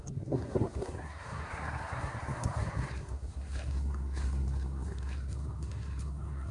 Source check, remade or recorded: remade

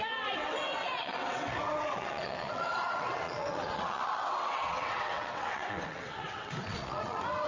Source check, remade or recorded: remade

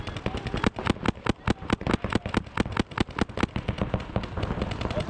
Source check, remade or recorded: recorded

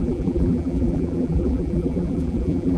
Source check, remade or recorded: remade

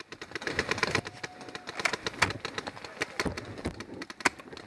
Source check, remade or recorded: recorded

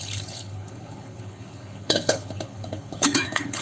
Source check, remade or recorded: remade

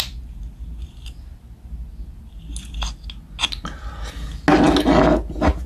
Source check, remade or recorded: recorded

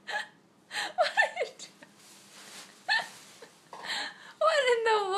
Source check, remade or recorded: recorded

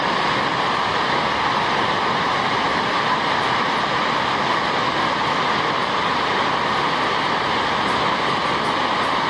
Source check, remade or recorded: recorded